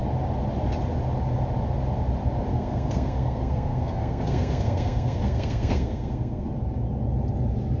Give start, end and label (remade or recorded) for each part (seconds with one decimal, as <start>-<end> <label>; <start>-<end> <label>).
0.0-2.5 recorded; 2.5-6.5 remade; 6.5-7.8 recorded

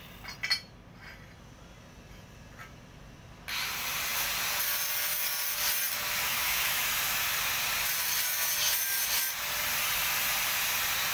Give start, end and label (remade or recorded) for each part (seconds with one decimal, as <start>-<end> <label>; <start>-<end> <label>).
0.0-6.3 recorded; 6.3-6.8 remade; 6.8-11.1 recorded

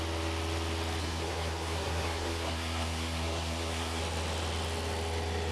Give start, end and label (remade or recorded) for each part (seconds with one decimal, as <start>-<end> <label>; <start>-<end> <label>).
0.0-1.0 recorded; 1.0-4.0 remade; 4.0-5.5 recorded

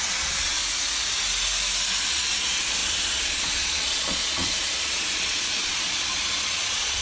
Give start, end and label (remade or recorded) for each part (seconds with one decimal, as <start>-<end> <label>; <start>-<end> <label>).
0.0-0.6 remade; 0.6-2.1 recorded; 2.1-7.0 remade